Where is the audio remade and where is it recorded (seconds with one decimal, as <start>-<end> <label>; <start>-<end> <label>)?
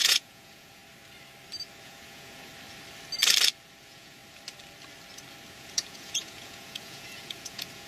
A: 0.0-0.8 remade; 0.8-1.8 recorded; 1.8-2.5 remade; 2.5-3.8 recorded; 3.8-4.2 remade; 4.2-5.5 recorded; 5.5-7.9 remade